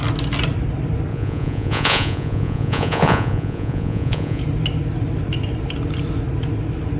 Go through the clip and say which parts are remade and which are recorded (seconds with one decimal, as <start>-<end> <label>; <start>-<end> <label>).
0.0-1.1 recorded; 1.1-4.4 remade; 4.4-7.0 recorded